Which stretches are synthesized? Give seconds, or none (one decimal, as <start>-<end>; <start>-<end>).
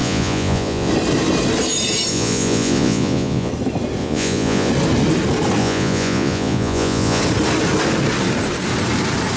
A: 0.0-0.9; 2.1-3.5; 4.0-4.7; 5.6-7.2